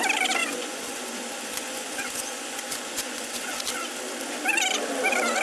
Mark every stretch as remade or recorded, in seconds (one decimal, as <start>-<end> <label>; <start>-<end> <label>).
0.0-0.4 recorded; 0.4-3.6 remade; 3.6-5.4 recorded